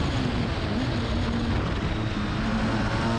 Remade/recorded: recorded